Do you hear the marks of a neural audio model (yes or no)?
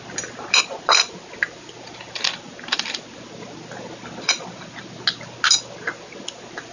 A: no